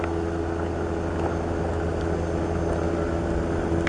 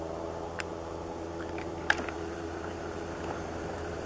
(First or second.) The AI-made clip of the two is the second